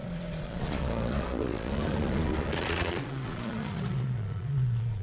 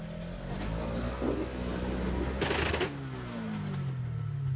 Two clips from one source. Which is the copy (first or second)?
first